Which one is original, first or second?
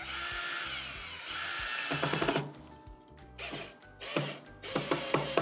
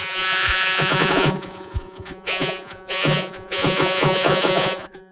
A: first